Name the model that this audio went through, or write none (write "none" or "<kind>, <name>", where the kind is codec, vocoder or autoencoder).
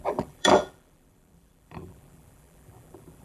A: vocoder, BigVGAN v2